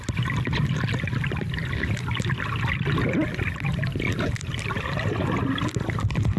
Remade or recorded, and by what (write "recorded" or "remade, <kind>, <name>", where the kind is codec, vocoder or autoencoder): recorded